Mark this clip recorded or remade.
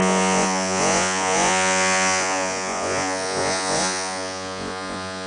remade